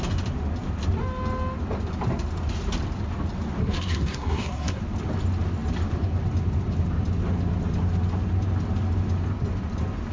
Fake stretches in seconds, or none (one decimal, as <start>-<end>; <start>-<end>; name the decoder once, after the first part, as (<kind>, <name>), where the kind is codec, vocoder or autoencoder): 3.6-4.8 (codec, SNAC)